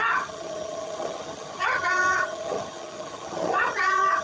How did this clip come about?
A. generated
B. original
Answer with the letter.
A